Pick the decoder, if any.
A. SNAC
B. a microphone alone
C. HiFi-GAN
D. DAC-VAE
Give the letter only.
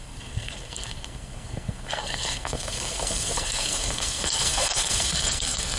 A